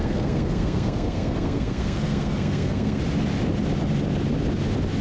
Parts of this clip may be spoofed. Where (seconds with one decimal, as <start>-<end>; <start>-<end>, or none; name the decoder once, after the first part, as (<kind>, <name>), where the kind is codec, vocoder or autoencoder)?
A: 0.0-3.0 (codec, SNAC)